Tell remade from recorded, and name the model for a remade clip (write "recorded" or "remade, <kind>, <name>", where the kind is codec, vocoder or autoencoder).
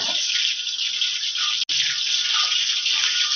recorded